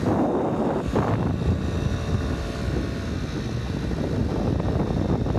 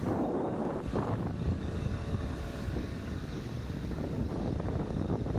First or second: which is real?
first